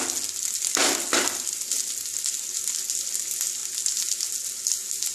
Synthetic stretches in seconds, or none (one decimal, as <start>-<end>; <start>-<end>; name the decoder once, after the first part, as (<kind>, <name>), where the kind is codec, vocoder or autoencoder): none